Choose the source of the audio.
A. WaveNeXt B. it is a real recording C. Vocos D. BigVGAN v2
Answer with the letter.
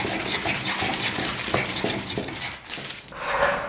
B